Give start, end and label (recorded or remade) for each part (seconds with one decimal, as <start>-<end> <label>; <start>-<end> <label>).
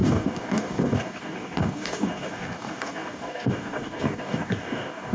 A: 0.0-5.1 remade